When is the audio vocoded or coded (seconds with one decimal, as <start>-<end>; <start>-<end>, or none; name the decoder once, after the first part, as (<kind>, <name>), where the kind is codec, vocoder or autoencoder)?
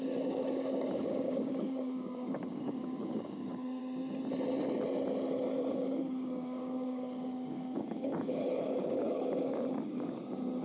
0.0-3.8 (codec, DAC); 5.7-10.6